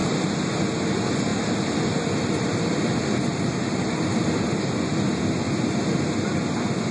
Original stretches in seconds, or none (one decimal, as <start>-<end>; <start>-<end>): 0.0-1.3; 5.2-6.9